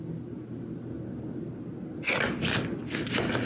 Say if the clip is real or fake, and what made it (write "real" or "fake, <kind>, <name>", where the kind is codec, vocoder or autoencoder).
real